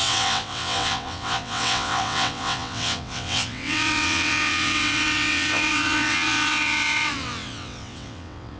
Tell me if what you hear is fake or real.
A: fake